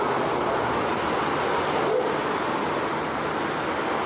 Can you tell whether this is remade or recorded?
recorded